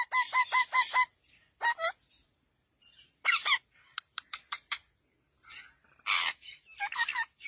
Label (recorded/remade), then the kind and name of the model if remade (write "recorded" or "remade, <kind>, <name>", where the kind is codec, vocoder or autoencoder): remade, vocoder, BigVGAN v2